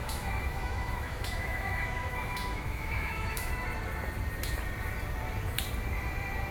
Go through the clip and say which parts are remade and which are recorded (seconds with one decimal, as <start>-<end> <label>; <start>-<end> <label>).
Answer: 0.0-3.5 remade; 3.5-6.5 recorded